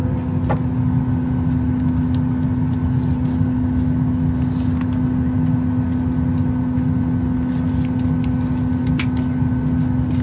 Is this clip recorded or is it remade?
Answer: recorded